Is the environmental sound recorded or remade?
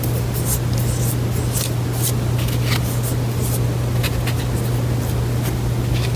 recorded